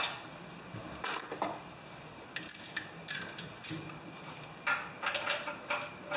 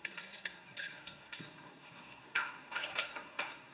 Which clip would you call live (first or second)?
first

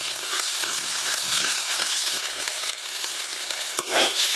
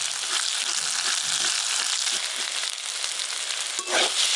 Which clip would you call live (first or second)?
second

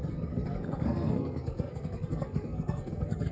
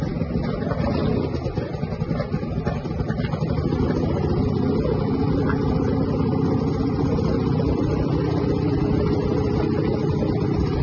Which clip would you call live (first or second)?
second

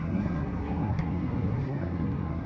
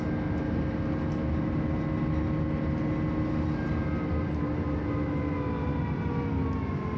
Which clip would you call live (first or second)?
second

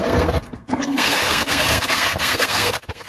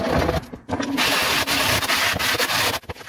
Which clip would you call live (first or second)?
second